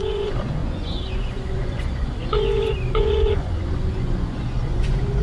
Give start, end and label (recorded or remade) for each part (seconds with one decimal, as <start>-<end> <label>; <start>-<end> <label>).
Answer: 0.0-5.2 remade